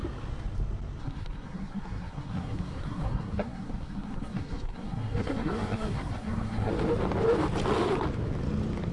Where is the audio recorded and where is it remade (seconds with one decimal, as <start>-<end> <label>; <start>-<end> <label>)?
0.0-1.0 recorded; 1.0-6.7 remade; 6.7-8.9 recorded